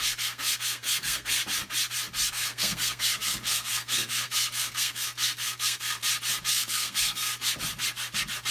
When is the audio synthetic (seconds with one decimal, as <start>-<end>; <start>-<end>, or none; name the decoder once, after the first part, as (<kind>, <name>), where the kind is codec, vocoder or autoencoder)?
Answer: 0.0-1.4 (codec, SNAC); 2.3-6.0; 6.5-7.3